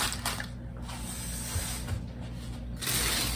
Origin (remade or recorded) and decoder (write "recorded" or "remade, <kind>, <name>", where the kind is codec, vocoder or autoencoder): recorded